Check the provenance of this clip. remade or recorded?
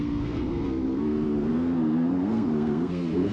remade